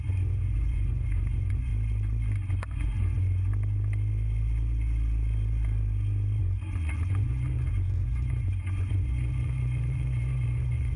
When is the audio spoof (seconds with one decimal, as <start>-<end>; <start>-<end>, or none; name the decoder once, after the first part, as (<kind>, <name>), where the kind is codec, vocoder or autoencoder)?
0.0-1.7 (vocoder, Vocos); 2.5-3.5; 6.4-11.0